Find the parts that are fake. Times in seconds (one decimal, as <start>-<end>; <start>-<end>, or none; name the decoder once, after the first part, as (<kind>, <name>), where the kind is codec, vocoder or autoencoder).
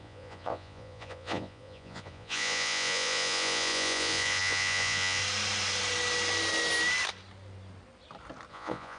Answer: 0.0-5.2 (vocoder, Vocos); 8.5-9.0